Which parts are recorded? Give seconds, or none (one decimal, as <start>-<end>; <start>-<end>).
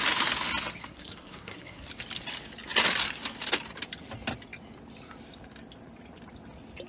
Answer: 0.0-0.8; 1.9-6.9